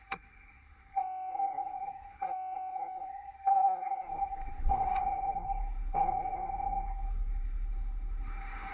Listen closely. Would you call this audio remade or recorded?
remade